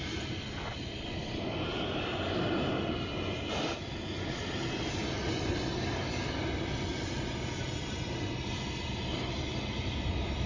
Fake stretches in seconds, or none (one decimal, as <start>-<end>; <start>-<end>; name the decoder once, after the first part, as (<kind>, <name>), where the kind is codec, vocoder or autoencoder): none